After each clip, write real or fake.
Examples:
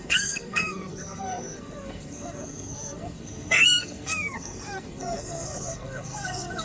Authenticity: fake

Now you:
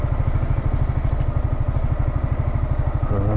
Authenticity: real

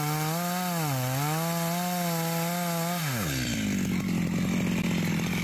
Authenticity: real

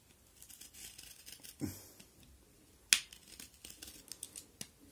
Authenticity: real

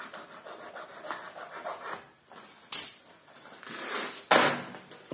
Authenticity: real